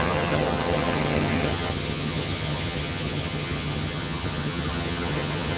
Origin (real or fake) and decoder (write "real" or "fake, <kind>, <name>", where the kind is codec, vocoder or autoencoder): fake, vocoder, HiFi-GAN